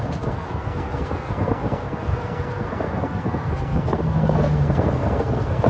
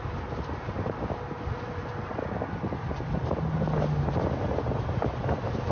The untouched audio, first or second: second